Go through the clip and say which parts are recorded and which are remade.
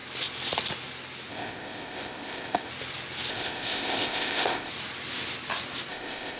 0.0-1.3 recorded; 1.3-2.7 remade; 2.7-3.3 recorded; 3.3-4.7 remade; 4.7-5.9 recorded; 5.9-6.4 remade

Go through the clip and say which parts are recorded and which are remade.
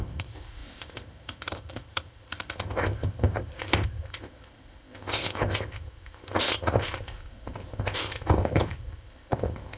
0.0-9.8 remade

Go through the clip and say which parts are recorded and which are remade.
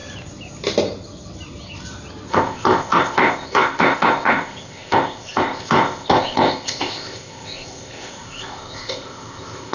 0.0-2.3 recorded; 2.3-9.7 remade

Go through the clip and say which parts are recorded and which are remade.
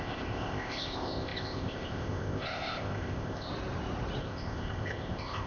0.0-3.5 remade; 3.5-4.2 recorded; 4.2-5.5 remade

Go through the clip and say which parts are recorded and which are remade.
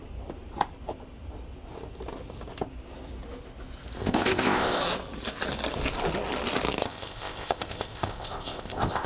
0.0-4.0 recorded; 4.0-4.8 remade; 4.8-6.8 recorded; 6.8-9.1 remade